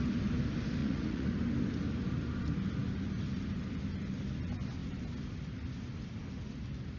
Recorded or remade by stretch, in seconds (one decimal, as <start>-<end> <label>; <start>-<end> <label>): 0.0-0.8 recorded; 0.8-1.3 remade; 1.3-7.0 recorded